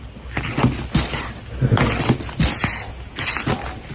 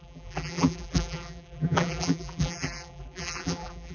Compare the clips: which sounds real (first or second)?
first